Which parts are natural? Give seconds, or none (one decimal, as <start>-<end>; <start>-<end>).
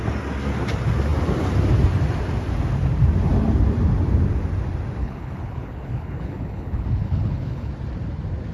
0.0-5.0; 7.7-8.5